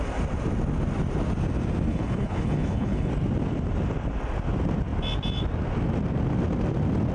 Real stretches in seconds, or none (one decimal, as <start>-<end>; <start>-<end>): 0.0-1.9; 3.1-7.1